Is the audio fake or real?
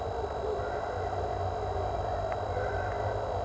real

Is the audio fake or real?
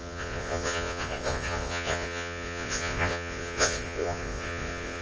fake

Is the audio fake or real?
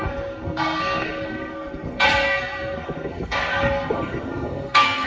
fake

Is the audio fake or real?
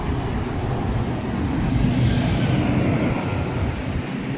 real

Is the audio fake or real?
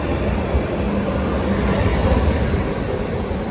real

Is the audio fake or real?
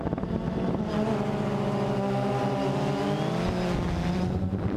real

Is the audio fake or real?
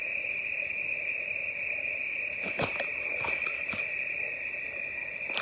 fake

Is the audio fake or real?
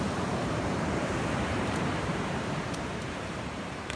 fake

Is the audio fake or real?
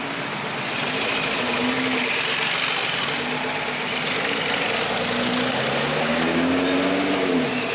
real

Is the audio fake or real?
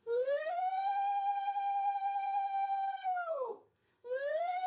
fake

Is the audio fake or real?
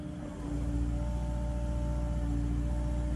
real